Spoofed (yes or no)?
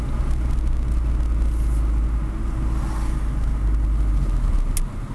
no